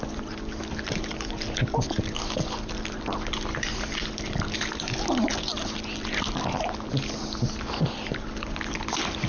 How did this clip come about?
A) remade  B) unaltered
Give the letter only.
B